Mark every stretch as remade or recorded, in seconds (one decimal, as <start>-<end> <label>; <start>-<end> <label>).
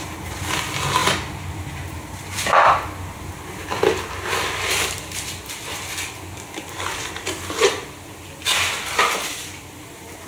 0.0-10.3 recorded